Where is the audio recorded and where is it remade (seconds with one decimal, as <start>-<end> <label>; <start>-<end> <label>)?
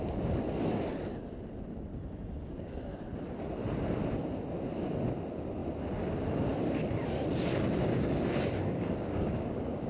0.0-1.9 recorded; 1.9-2.9 remade; 2.9-7.8 recorded; 7.8-9.9 remade